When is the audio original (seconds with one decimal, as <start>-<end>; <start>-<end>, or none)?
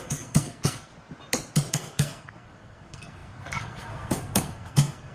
0.9-1.7